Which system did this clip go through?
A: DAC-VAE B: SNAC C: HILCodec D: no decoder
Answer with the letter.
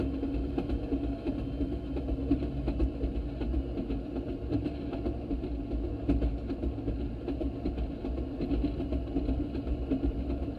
D